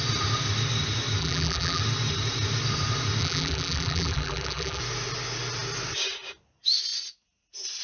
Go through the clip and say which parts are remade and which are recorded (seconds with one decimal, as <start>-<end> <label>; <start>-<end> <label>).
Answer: 0.0-1.2 recorded; 1.2-1.8 remade; 1.8-3.2 recorded; 3.2-4.8 remade; 4.8-7.8 recorded